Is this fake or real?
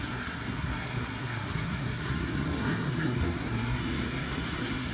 fake